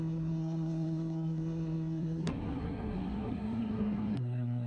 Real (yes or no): no